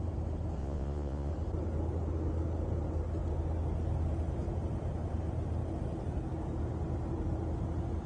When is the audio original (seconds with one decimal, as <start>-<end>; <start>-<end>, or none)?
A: 0.0-0.6; 1.3-8.1

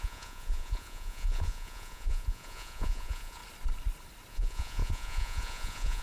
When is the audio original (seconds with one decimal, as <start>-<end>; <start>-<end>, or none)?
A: 3.4-4.3

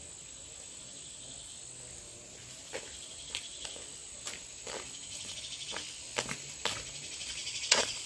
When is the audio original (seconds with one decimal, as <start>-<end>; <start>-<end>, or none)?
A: 0.0-7.4

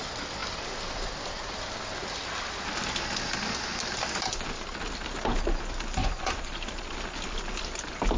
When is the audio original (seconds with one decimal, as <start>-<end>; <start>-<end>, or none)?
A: 0.0-6.0; 6.5-8.2